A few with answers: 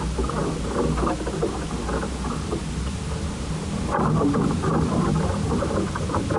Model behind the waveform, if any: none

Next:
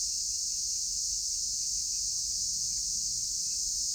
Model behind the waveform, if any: none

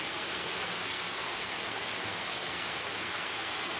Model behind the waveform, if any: codec, SNAC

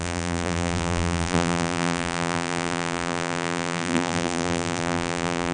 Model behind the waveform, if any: vocoder, BigVGAN v2